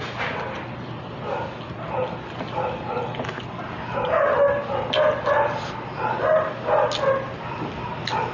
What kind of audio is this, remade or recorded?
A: recorded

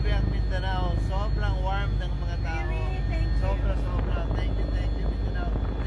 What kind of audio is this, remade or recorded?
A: recorded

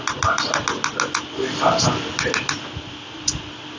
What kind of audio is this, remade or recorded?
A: recorded